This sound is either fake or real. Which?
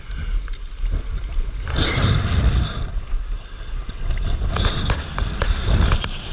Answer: real